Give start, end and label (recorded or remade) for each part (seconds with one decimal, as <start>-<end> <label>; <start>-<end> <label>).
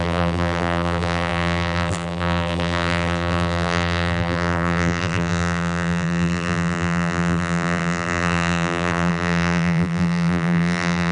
0.0-11.1 remade